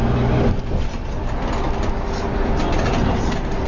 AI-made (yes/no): no